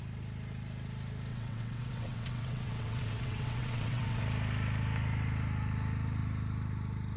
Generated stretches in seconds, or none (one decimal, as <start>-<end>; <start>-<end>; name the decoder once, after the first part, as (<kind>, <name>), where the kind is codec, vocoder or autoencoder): 1.3-4.2 (vocoder, WaveNeXt)